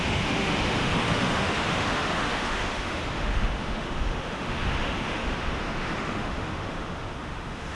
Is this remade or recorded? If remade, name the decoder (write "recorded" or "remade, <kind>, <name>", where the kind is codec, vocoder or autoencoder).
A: remade, autoencoder, DAC-VAE